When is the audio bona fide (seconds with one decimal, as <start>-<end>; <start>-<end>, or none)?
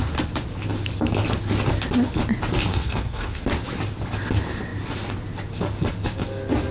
0.0-2.7; 3.4-6.7